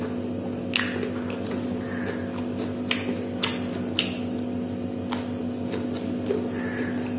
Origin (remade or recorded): recorded